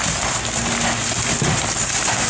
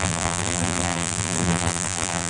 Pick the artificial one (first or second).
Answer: second